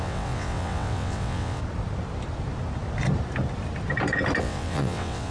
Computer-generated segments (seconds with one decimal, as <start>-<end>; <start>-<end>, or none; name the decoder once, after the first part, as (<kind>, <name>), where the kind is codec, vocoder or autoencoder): 0.0-1.6 (vocoder, WaveNeXt); 4.4-5.3